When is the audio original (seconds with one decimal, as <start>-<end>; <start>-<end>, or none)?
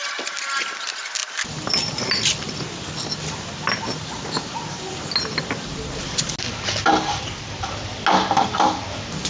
0.0-9.3